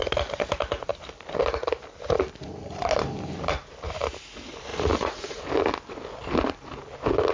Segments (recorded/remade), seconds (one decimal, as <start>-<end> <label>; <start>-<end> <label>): 0.0-4.7 recorded; 4.7-5.4 remade; 5.4-7.3 recorded